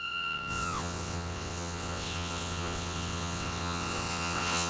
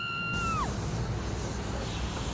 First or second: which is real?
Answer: second